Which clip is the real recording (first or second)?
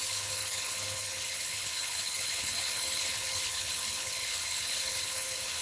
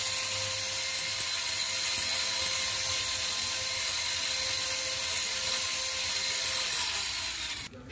second